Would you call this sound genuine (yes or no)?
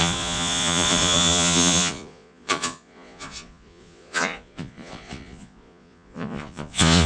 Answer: no